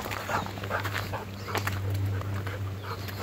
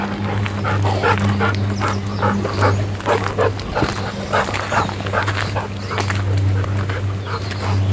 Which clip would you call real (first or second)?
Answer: second